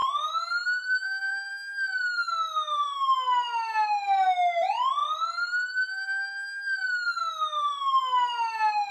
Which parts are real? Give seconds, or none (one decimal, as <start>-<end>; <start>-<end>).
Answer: 1.5-8.9